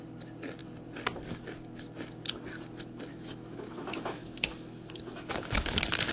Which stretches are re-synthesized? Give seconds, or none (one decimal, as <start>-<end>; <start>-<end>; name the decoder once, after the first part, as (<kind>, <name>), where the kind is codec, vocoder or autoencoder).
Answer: 3.1-6.1 (autoencoder, DAC-VAE)